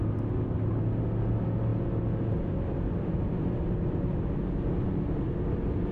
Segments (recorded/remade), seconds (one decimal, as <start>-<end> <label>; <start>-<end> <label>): 0.0-5.9 recorded